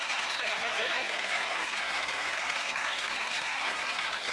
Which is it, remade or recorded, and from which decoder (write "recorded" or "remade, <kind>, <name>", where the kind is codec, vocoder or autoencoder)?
remade, codec, SNAC